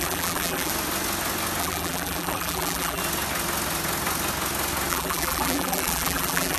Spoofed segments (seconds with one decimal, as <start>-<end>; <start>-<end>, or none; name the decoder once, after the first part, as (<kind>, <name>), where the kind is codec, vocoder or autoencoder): 0.0-0.7 (vocoder, BigVGAN v2); 1.6-3.0; 4.9-6.6